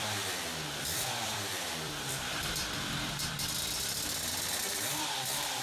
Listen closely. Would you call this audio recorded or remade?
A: remade